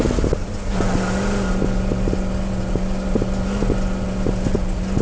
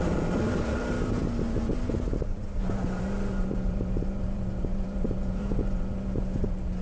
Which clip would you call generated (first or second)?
second